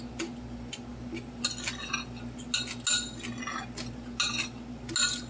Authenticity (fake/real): real